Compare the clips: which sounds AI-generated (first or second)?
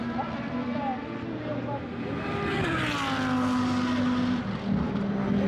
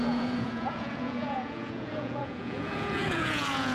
second